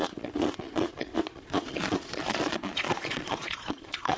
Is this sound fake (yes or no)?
yes